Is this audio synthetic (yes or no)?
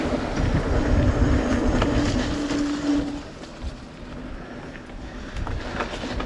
no